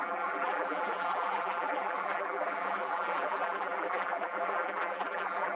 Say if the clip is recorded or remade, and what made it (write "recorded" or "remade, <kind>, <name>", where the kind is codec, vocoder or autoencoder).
remade, vocoder, BigVGAN v2